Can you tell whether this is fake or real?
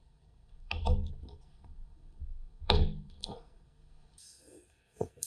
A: fake